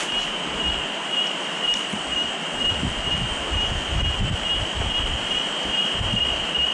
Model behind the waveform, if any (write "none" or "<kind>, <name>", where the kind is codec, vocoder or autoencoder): none